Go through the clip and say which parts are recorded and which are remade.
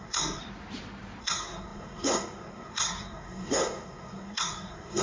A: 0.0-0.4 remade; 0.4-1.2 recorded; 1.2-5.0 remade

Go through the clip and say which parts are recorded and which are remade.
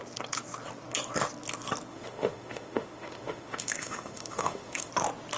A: 0.0-1.9 recorded; 1.9-4.9 remade; 4.9-5.4 recorded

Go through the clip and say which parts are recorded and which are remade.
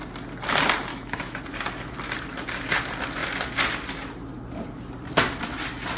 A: 0.0-0.9 recorded; 0.9-1.4 remade; 1.4-6.0 recorded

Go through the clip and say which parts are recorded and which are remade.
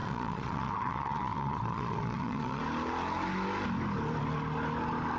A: 0.0-2.6 remade; 2.6-5.2 recorded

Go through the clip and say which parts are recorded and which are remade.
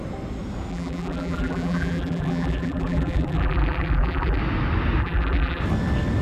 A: 0.0-0.7 recorded; 0.7-4.4 remade; 4.4-5.0 recorded; 5.0-5.6 remade; 5.6-6.2 recorded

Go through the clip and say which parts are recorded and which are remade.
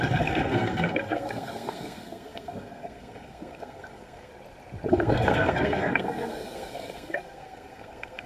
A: 0.0-4.3 remade; 4.3-4.9 recorded; 4.9-8.3 remade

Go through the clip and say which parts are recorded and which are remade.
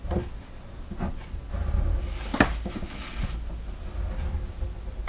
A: 0.0-5.1 recorded